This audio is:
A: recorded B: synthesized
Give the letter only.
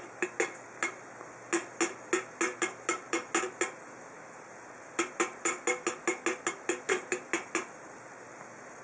A